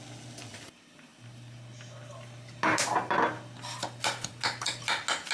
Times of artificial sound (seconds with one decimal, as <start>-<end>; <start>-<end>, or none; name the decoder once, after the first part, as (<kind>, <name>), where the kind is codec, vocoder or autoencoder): none